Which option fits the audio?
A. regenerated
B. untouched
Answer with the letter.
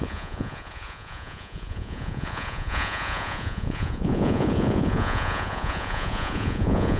A